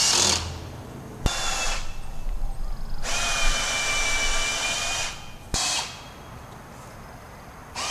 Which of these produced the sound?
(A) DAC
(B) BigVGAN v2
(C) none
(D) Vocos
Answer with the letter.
C